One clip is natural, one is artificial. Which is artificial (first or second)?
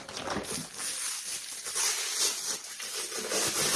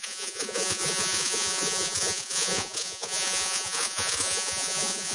second